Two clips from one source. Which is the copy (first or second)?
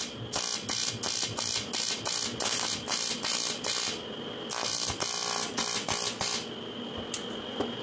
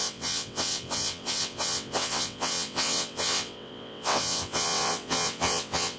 second